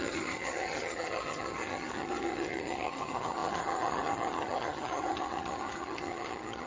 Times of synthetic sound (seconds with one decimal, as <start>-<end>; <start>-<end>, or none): 0.0-6.7